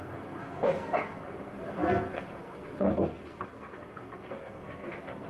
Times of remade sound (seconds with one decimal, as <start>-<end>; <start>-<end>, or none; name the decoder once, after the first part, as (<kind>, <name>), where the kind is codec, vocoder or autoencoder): 0.0-5.3 (codec, SNAC)